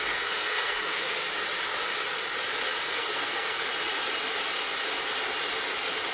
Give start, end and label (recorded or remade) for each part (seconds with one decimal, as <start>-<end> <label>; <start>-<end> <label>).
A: 0.0-1.2 remade; 1.2-2.9 recorded; 2.9-3.7 remade; 3.7-6.1 recorded